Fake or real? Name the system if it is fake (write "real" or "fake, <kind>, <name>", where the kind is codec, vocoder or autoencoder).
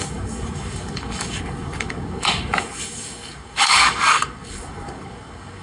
fake, codec, DAC